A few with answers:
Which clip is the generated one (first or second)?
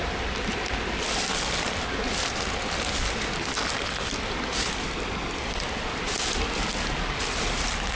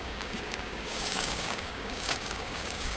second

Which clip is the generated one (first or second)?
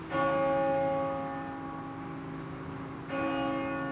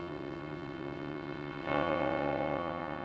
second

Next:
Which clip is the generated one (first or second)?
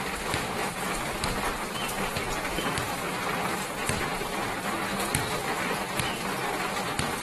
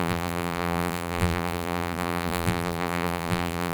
second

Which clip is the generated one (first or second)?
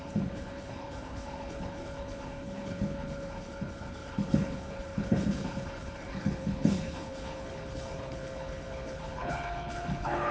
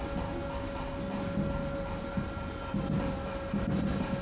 first